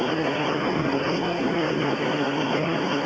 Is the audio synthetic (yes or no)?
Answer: yes